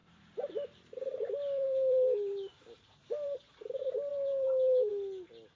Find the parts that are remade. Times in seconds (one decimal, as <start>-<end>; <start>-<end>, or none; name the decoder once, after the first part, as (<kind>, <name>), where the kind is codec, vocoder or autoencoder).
0.0-3.4 (vocoder, BigVGAN v2); 4.1-4.9